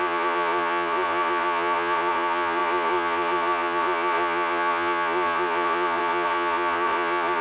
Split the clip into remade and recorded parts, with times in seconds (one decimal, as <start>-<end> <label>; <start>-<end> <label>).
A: 0.0-7.4 remade